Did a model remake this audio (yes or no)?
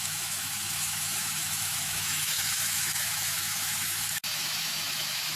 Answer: yes